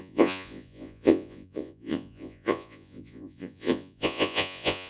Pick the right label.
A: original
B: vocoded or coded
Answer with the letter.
B